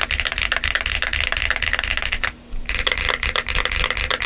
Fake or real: real